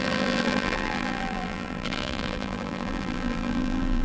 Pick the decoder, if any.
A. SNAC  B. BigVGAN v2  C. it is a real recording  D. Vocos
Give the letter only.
B